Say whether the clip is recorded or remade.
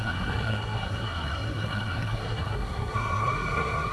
remade